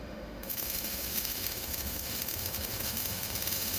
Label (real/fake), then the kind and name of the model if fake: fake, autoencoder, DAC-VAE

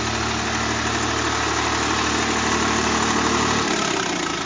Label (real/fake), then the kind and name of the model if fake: real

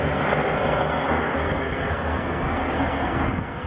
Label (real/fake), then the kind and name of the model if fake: fake, codec, SNAC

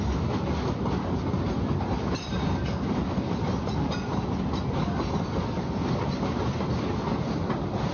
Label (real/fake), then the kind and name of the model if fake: real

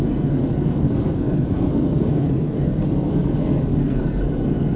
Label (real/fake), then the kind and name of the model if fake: fake, codec, SNAC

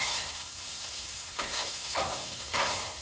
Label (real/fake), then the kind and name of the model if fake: fake, codec, SNAC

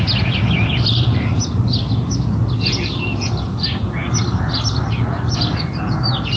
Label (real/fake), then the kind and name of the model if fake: real